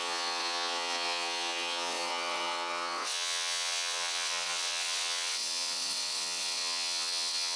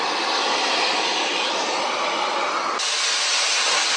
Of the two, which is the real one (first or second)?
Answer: second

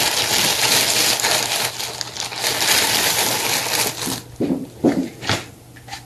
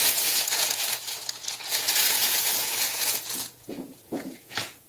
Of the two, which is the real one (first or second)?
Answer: first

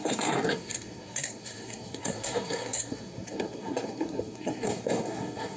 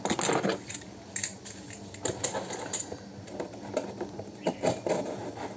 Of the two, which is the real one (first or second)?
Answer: second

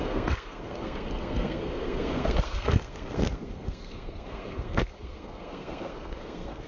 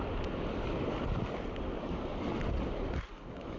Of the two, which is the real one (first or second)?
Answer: second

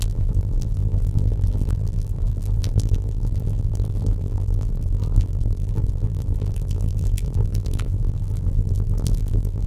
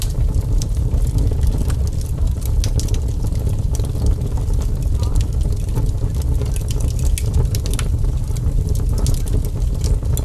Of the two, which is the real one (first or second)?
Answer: second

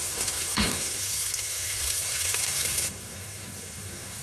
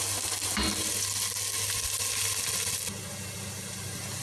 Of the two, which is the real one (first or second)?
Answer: second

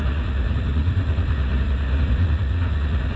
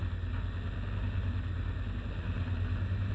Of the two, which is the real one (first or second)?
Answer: second